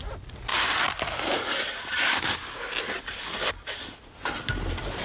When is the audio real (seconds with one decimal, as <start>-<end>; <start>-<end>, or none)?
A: 0.0-5.0